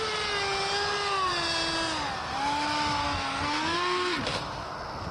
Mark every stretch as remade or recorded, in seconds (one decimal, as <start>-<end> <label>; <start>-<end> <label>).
0.0-3.0 recorded; 3.0-4.2 remade; 4.2-5.1 recorded

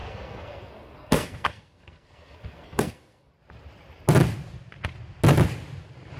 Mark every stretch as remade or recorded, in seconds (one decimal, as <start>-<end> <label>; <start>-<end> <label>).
0.0-3.3 remade; 3.3-6.2 recorded

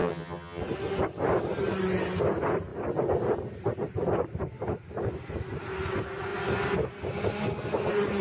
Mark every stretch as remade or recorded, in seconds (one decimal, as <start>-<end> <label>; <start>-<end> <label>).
0.0-0.6 remade; 0.6-8.2 recorded

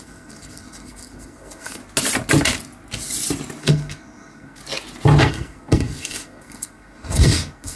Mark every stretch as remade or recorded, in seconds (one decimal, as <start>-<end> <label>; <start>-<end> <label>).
0.0-1.8 remade; 1.8-3.6 recorded; 3.6-4.6 remade; 4.6-5.2 recorded; 5.2-7.8 remade

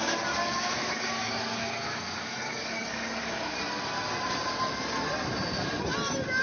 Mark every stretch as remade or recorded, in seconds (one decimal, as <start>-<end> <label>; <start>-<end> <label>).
0.0-0.4 recorded; 0.4-3.6 remade; 3.6-6.4 recorded

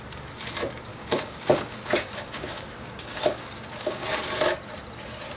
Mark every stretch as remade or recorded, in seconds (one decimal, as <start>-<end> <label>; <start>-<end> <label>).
0.0-0.9 recorded; 0.9-4.1 remade; 4.1-5.4 recorded

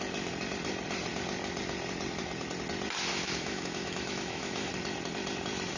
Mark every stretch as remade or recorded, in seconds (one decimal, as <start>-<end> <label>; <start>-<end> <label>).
0.0-3.1 recorded; 3.1-4.7 remade; 4.7-5.8 recorded

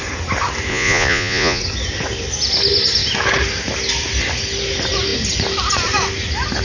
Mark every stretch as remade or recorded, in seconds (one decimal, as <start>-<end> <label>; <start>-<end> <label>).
0.0-0.7 recorded; 0.7-1.6 remade; 1.6-6.6 recorded